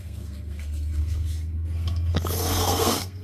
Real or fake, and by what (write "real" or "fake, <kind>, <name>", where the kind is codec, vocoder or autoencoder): fake, codec, SNAC